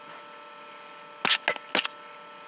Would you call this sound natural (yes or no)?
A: yes